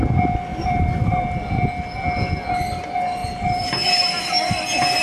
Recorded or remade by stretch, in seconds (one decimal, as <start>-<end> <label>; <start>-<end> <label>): 0.0-0.5 recorded; 0.5-1.2 remade; 1.2-3.2 recorded; 3.2-3.7 remade; 3.7-5.0 recorded